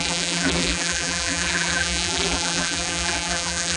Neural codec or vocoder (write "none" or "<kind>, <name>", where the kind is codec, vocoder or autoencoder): vocoder, BigVGAN v2